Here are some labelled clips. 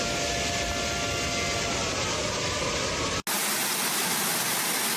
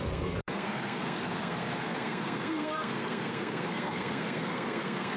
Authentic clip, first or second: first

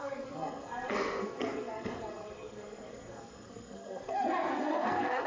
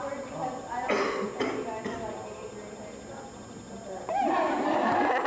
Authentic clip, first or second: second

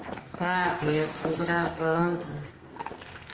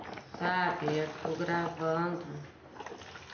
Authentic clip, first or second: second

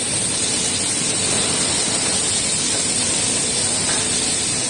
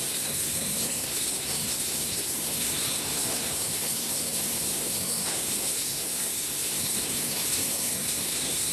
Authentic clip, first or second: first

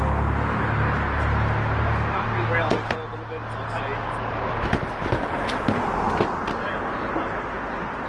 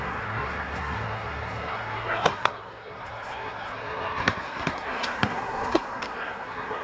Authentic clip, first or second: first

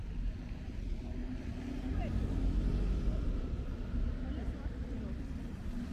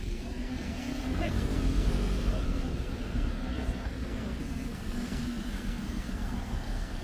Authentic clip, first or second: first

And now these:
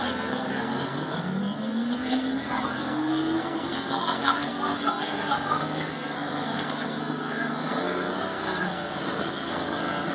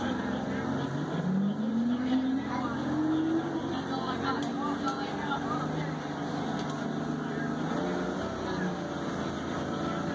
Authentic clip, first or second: second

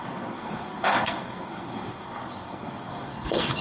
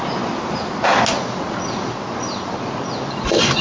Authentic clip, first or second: second